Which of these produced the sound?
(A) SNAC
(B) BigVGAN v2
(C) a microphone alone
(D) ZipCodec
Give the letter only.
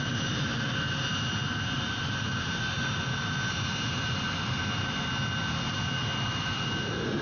C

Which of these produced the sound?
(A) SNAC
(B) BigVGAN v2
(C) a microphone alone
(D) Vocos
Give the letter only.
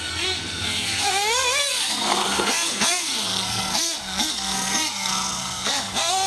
A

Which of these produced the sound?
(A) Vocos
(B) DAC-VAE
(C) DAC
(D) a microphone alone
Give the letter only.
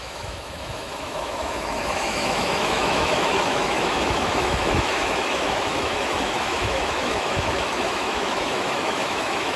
B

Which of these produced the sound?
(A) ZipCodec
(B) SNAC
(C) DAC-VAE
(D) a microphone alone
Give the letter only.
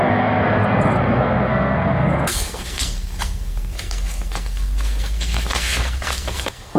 B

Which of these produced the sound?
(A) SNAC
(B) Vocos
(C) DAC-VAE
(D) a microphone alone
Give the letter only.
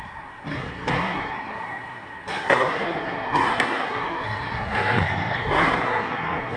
A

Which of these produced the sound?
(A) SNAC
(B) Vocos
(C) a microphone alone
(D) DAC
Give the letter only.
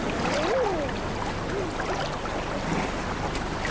C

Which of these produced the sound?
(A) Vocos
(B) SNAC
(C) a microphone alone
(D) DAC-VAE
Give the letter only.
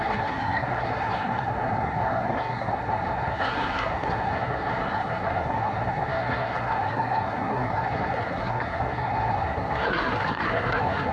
B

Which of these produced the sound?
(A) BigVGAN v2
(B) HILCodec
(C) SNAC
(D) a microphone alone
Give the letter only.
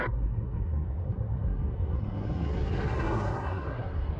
C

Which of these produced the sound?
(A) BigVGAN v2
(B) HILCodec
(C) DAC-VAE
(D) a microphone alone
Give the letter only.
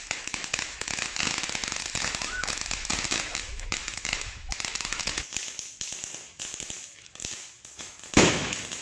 C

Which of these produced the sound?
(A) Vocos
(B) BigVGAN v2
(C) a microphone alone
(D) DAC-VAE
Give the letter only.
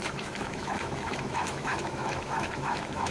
D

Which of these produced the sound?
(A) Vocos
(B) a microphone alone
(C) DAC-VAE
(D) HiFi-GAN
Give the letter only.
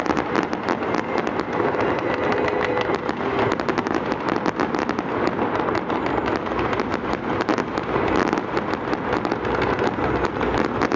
B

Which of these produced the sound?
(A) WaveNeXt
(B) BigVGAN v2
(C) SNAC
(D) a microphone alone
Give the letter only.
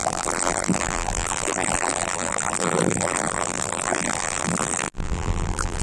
B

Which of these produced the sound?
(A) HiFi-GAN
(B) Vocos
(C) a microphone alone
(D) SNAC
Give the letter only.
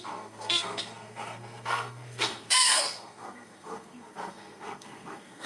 D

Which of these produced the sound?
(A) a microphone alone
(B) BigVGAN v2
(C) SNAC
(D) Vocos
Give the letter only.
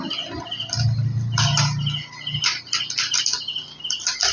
A